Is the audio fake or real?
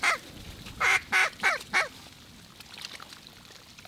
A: real